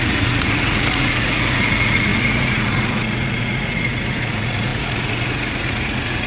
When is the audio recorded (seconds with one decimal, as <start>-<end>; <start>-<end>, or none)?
none